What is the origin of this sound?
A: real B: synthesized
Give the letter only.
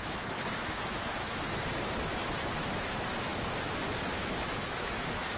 B